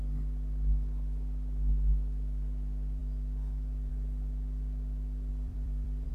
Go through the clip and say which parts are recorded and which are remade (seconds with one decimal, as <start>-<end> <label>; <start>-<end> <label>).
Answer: 0.0-5.3 recorded; 5.3-6.1 remade

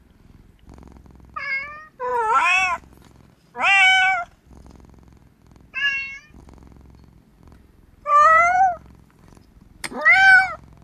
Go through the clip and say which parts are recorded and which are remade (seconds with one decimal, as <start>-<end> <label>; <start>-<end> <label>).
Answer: 0.0-2.1 recorded; 2.1-2.8 remade; 2.8-7.3 recorded; 7.3-9.5 remade; 9.5-10.8 recorded